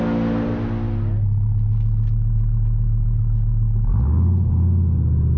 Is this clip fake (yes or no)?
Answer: no